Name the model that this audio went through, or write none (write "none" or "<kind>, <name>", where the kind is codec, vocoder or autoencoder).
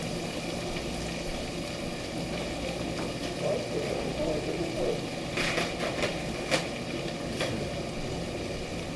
none